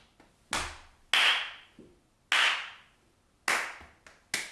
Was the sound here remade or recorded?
recorded